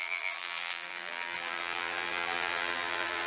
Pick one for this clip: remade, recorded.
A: remade